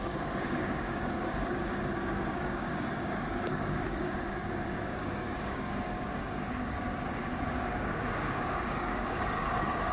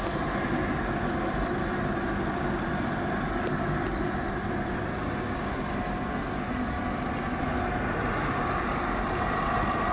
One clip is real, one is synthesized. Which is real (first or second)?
second